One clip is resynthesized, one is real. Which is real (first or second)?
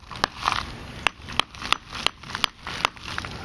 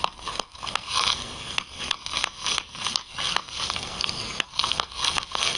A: first